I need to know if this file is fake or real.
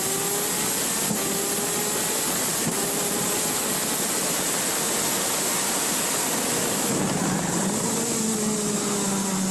real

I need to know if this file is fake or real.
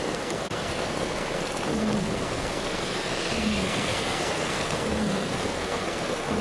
fake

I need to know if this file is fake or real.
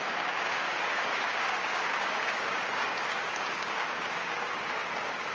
fake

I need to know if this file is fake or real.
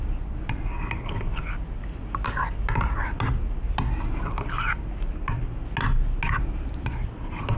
real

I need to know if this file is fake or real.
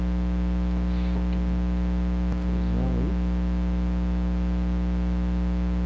real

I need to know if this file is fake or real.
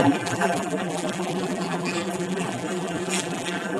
fake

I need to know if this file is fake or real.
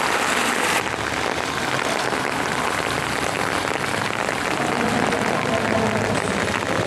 real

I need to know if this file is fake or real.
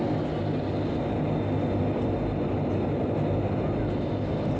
real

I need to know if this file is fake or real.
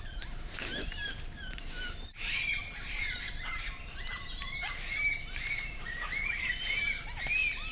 fake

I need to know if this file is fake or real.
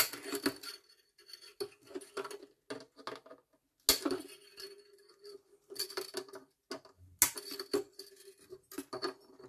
real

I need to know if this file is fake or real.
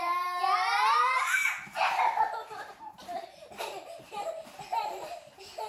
fake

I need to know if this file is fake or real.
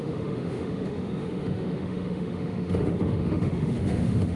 fake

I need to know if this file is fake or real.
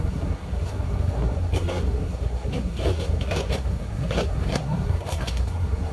fake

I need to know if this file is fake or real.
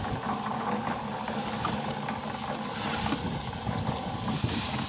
real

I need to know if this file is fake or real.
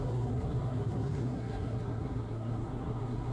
fake